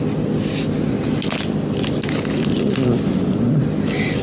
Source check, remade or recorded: recorded